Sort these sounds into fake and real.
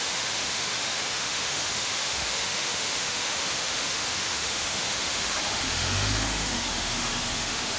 fake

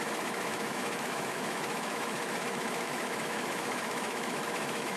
fake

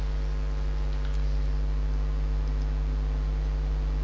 real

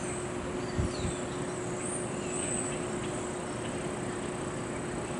real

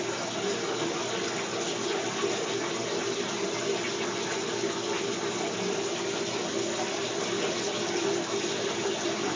real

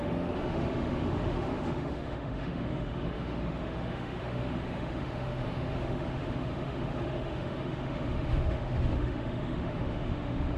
fake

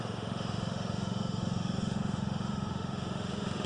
fake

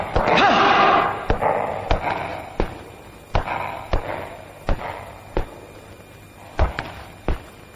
real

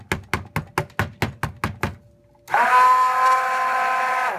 real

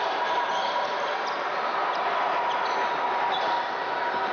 real